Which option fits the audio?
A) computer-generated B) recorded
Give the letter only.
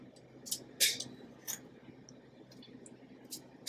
B